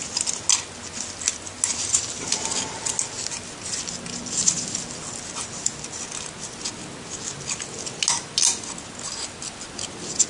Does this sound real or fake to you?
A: real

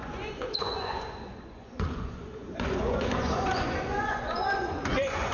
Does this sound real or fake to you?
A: fake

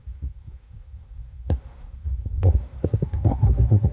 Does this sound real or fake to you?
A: fake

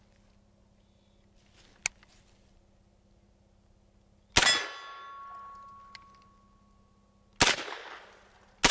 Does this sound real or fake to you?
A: real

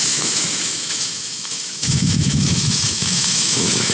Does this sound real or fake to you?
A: fake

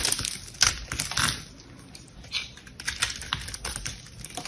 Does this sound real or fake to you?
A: real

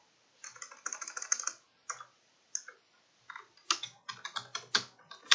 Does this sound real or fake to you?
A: real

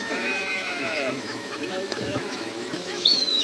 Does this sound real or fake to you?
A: fake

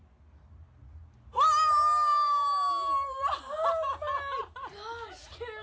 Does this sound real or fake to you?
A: real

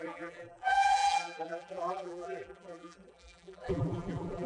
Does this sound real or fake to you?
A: fake